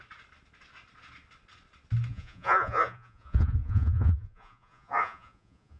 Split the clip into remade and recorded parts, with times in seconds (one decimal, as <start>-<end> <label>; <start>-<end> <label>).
0.0-2.1 recorded; 2.1-5.8 remade